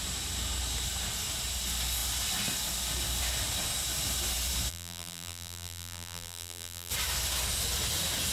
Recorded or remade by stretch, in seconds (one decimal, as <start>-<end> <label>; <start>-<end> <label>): 0.0-4.7 recorded; 4.7-6.9 remade; 6.9-8.3 recorded